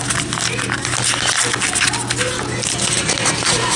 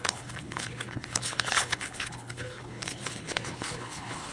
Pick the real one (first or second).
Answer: first